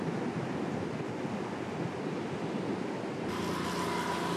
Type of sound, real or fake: real